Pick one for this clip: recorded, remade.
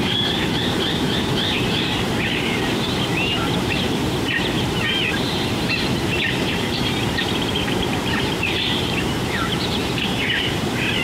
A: remade